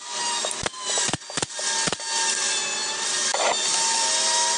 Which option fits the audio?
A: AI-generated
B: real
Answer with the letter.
B